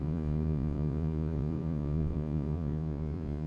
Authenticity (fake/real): fake